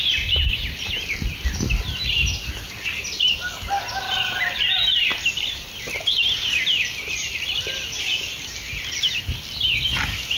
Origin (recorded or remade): recorded